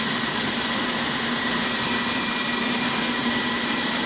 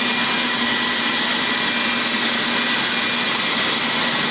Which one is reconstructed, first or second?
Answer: first